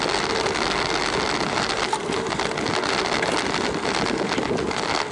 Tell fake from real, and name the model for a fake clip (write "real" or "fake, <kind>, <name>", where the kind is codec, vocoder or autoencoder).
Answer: real